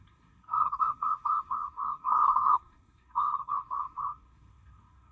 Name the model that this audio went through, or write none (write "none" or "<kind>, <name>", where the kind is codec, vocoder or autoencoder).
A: codec, SNAC